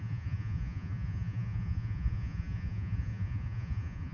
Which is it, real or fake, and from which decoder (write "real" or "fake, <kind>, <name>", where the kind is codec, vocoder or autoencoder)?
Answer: fake, vocoder, Vocos